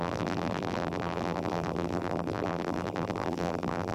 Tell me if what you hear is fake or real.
fake